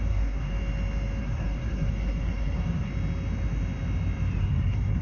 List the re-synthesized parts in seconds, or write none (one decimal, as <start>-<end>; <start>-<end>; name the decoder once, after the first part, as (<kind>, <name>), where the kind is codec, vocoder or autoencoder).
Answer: 0.0-0.5 (codec, SNAC); 1.2-2.9; 4.4-5.0